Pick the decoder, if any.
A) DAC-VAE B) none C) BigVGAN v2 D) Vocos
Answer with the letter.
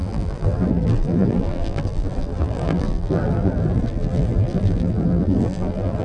C